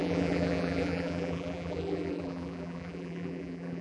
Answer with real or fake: fake